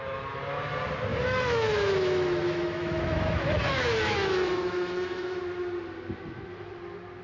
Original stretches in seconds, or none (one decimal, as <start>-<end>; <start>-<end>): 0.0-1.1; 5.4-7.2